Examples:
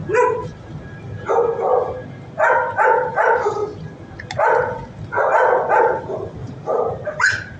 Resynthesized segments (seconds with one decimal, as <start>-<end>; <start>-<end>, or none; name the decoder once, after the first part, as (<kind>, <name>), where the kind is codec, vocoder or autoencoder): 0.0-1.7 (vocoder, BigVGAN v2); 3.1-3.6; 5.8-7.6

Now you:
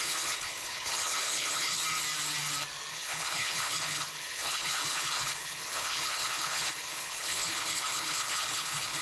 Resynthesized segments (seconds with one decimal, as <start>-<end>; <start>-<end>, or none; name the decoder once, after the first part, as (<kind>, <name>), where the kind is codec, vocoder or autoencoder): 0.0-1.8 (codec, HILCodec); 2.9-9.0

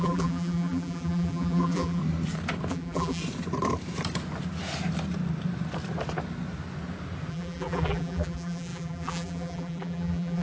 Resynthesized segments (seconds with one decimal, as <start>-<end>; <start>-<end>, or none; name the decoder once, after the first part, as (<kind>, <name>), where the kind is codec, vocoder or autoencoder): 0.0-2.0 (vocoder, BigVGAN v2); 2.7-3.2; 7.3-10.4

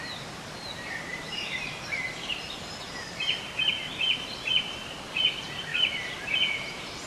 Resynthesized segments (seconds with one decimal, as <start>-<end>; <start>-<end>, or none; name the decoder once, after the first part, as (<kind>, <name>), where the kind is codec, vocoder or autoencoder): 1.1-3.5 (vocoder, BigVGAN v2); 5.7-7.1